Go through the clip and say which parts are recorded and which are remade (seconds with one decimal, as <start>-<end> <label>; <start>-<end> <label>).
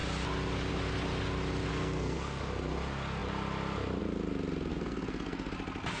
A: 0.0-1.7 recorded; 1.7-2.4 remade; 2.4-4.7 recorded; 4.7-5.5 remade; 5.5-6.0 recorded